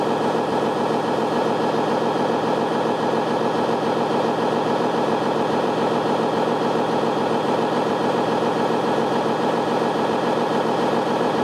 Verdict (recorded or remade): remade